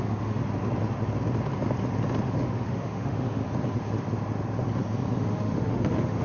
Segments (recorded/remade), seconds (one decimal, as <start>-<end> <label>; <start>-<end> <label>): 0.0-0.4 remade; 0.4-2.4 recorded; 2.4-3.4 remade; 3.4-5.2 recorded; 5.2-6.2 remade